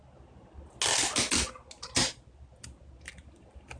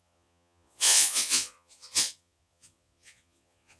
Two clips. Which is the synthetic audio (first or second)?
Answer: second